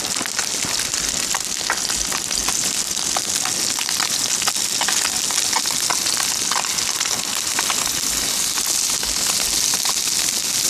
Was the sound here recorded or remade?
recorded